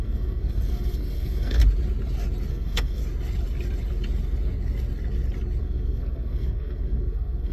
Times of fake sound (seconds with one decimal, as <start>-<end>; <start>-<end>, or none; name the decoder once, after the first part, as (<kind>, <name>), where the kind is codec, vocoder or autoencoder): 0.0-1.6 (codec, SNAC); 2.5-3.0; 5.6-7.5